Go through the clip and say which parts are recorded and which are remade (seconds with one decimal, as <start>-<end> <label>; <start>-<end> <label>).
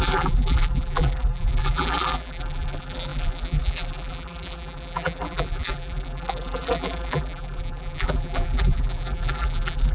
0.0-9.9 remade